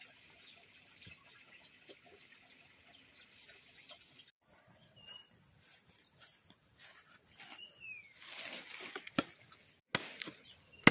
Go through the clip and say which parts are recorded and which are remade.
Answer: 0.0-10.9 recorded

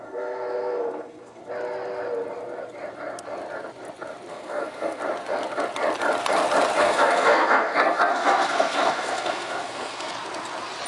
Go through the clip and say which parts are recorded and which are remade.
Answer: 0.0-1.4 remade; 1.4-4.3 recorded; 4.3-5.0 remade; 5.0-6.8 recorded; 6.8-10.1 remade; 10.1-10.9 recorded